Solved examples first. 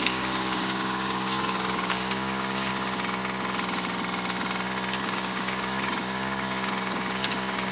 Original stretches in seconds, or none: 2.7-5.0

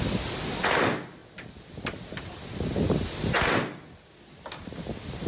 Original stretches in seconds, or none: 0.0-5.3